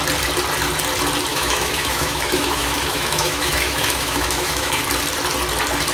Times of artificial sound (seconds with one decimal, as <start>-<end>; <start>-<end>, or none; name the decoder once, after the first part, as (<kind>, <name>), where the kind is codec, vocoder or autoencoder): 1.3-4.8 (autoencoder, DAC-VAE)